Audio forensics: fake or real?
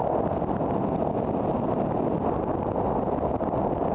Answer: real